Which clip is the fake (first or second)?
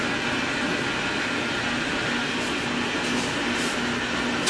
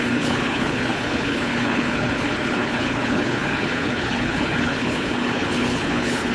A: second